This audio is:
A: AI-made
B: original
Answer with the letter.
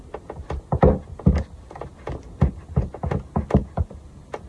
B